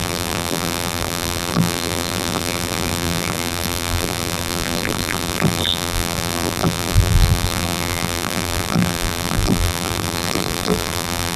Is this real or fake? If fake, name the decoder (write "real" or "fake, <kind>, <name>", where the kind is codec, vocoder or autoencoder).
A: fake, vocoder, BigVGAN v2